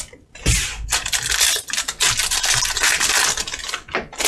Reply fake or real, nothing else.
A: real